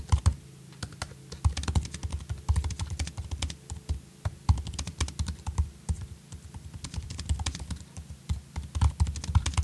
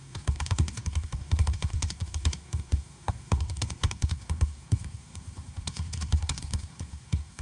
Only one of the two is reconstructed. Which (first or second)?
second